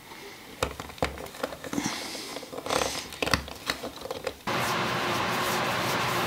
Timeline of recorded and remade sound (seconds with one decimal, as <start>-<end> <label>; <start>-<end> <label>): 0.0-3.9 recorded; 3.9-6.3 remade